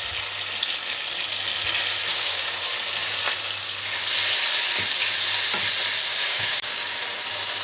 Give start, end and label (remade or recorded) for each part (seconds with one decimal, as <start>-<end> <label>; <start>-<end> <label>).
0.0-2.1 recorded; 2.1-2.7 remade; 2.7-6.1 recorded; 6.1-7.0 remade; 7.0-7.6 recorded